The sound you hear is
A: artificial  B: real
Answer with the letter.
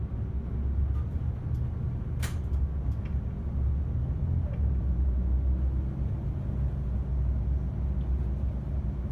B